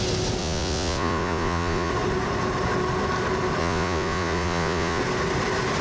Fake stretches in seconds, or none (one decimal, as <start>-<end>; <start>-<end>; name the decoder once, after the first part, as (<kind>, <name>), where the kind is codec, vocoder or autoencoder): 0.4-1.9 (vocoder, Vocos); 3.6-5.0